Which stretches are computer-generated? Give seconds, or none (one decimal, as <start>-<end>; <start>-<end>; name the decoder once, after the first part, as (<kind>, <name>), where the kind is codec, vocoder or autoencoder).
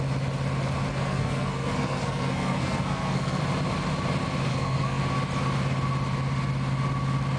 0.9-3.4 (codec, SNAC); 4.5-5.0